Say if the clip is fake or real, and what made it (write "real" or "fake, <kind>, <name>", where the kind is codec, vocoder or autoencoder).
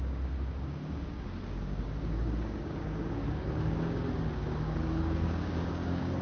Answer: fake, codec, DAC